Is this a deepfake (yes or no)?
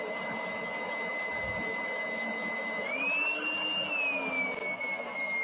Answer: no